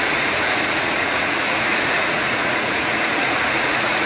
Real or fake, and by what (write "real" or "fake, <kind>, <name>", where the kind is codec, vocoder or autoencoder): fake, vocoder, Vocos